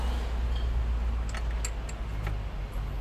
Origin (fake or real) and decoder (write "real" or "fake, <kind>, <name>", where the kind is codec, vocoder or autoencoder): real